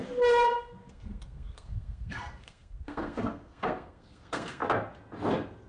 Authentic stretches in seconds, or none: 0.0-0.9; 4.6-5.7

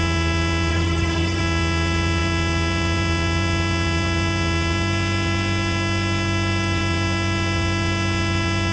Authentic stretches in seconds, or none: 0.0-0.7; 1.4-8.7

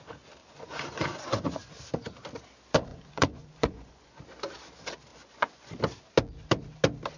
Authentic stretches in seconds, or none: 0.0-0.4; 1.7-2.9; 4.2-5.1; 5.7-7.2

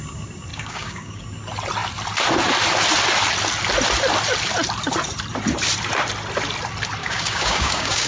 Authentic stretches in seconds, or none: 0.0-0.5; 1.2-7.0

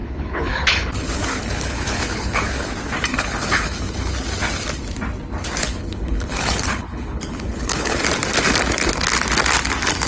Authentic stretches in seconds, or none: 2.7-3.1; 4.1-5.7; 8.0-10.1

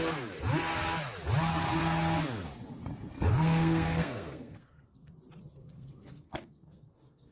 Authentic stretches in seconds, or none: 0.0-3.3; 5.1-5.6